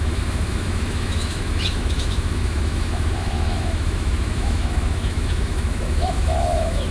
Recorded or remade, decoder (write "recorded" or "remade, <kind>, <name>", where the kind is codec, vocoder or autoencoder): remade, autoencoder, DAC-VAE